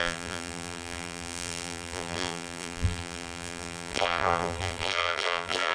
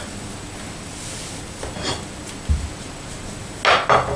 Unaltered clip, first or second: second